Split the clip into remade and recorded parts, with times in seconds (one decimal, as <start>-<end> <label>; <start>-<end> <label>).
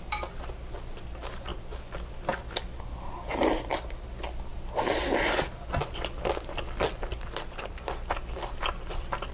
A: 0.0-9.3 recorded